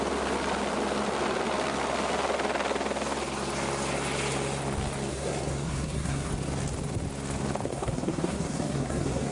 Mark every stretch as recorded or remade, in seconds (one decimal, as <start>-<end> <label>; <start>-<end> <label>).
0.0-5.1 recorded; 5.1-6.3 remade; 6.3-7.7 recorded; 7.7-9.3 remade